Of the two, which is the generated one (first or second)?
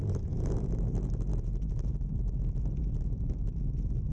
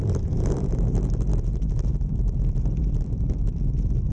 second